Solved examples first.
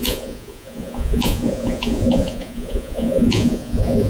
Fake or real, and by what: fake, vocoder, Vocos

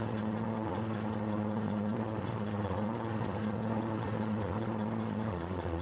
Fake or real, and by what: fake, vocoder, Vocos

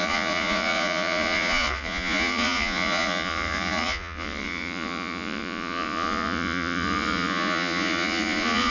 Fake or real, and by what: fake, vocoder, Vocos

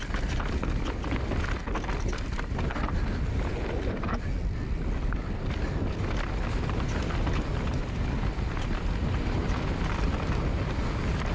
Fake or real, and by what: real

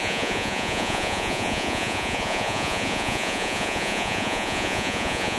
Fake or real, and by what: fake, vocoder, Vocos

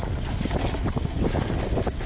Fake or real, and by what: real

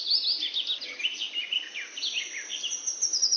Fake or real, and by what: real